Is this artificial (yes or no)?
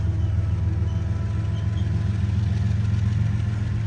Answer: no